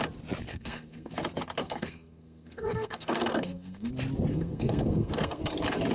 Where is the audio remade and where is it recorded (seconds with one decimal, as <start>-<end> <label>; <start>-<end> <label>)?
0.0-0.5 recorded; 0.5-1.1 remade; 1.1-1.6 recorded; 1.6-3.9 remade; 3.9-4.3 recorded; 4.3-5.4 remade; 5.4-5.9 recorded